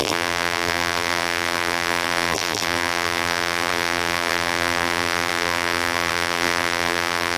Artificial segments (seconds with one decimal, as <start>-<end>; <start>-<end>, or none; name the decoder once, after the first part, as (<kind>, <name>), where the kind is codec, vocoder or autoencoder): 0.0-7.4 (vocoder, BigVGAN v2)